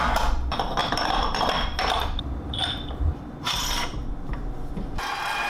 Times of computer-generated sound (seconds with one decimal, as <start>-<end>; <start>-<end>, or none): 0.8-4.1

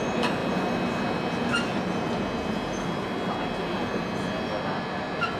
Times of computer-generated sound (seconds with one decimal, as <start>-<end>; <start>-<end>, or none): none